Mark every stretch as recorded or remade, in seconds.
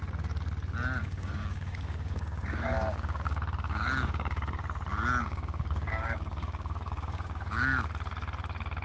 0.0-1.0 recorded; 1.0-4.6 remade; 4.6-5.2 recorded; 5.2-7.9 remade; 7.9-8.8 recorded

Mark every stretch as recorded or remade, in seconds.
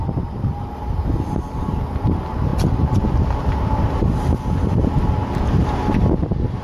0.0-6.6 recorded